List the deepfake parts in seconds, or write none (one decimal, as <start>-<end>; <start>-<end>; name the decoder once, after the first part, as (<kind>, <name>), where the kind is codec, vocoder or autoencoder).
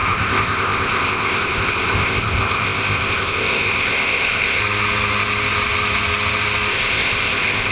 0.0-4.6 (codec, ZipCodec); 6.7-7.7